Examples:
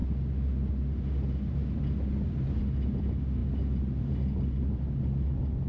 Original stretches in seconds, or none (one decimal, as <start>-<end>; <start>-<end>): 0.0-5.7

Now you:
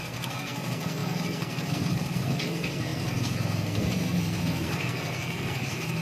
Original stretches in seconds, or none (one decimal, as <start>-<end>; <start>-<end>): none

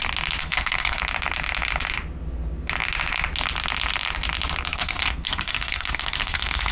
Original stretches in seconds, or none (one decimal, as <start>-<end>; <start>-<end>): 0.0-0.4; 1.0-4.7

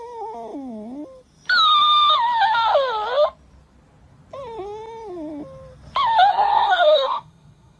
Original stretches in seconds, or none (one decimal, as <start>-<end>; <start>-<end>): 0.0-6.3